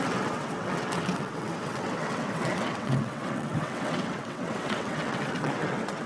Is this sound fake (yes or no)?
yes